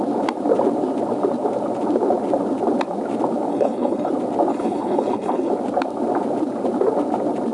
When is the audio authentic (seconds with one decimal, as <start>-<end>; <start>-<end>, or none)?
0.0-3.5; 4.1-4.5; 5.5-7.5